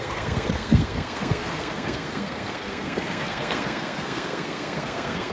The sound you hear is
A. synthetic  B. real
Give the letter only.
A